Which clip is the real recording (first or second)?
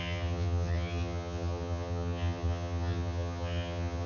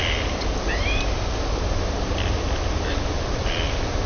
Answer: second